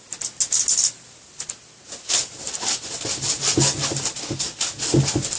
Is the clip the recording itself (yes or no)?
yes